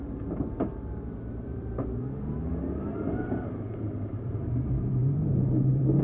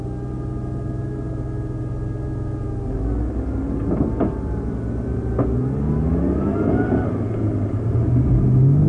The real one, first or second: second